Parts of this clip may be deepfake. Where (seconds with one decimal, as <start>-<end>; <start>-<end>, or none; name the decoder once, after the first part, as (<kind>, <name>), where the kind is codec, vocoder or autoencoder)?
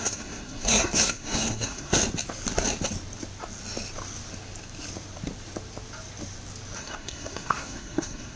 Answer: 0.0-2.0 (codec, SNAC); 6.8-8.4